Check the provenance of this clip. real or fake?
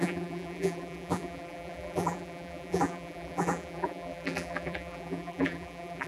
fake